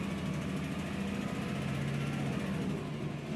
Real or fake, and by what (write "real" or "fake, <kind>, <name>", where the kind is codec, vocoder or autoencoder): real